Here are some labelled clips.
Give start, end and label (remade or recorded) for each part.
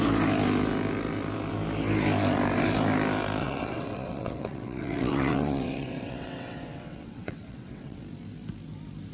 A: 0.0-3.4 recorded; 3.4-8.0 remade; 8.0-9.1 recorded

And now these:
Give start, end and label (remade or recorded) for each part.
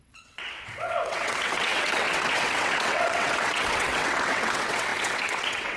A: 0.0-5.8 remade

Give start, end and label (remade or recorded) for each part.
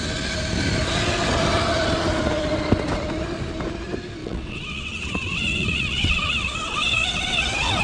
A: 0.0-4.2 recorded; 4.2-7.8 remade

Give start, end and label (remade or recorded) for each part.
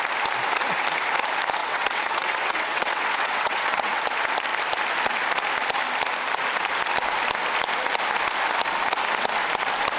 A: 0.0-1.6 recorded; 1.6-4.0 remade; 4.0-10.0 recorded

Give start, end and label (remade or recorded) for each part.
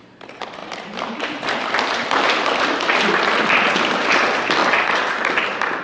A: 0.0-5.8 recorded